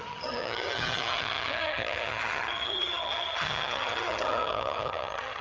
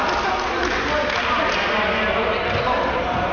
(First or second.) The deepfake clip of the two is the first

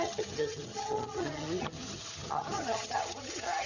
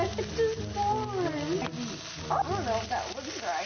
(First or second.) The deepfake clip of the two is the first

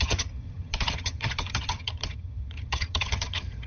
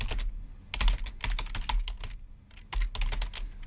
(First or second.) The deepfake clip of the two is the first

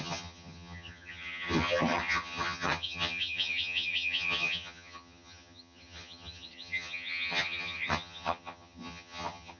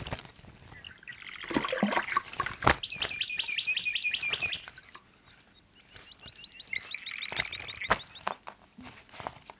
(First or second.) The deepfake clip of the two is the first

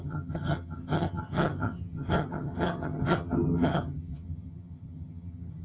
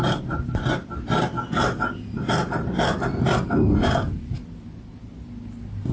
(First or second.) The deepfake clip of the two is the first